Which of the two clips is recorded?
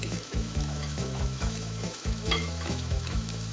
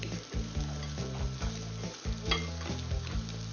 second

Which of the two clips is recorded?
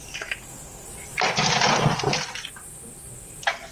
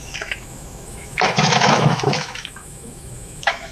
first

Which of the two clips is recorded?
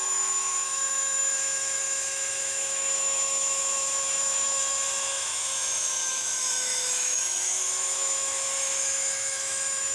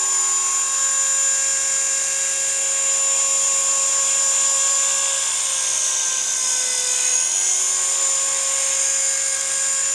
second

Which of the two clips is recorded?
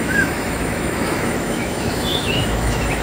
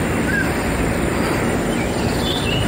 second